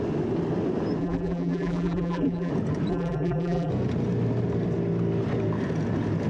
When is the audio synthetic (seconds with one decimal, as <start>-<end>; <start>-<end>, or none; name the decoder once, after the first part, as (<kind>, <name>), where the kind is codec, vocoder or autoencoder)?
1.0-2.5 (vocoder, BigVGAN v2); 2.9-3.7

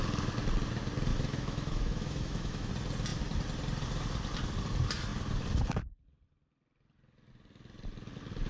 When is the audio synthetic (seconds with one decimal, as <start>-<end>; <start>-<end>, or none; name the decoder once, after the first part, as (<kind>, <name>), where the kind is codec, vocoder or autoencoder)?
1.1-2.7 (autoencoder, DAC-VAE)

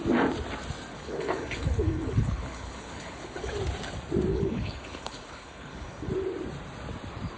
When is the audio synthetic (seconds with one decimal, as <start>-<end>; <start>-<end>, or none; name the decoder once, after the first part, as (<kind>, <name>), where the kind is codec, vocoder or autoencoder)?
0.9-3.5 (codec, HILCodec); 4.3-6.1

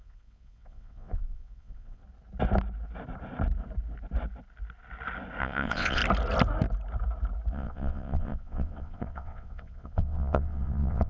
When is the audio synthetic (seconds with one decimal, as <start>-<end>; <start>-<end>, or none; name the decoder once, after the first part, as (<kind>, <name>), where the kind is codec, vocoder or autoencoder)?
0.0-2.0 (vocoder, WaveNeXt); 5.4-6.0; 7.5-11.1